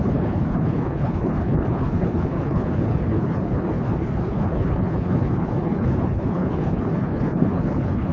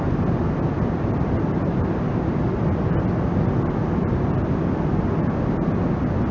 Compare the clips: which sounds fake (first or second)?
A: first